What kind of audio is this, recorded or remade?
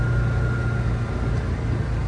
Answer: recorded